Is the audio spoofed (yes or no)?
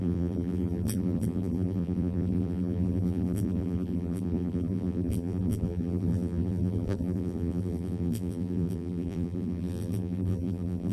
yes